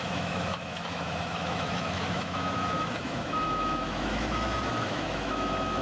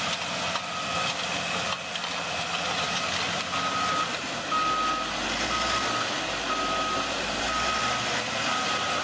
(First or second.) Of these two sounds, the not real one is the first